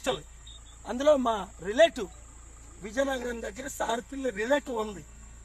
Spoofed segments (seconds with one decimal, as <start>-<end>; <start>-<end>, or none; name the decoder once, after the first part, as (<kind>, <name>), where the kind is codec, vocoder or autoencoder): 0.0-0.5 (codec, SNAC); 3.0-5.4